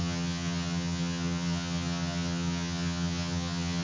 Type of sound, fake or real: fake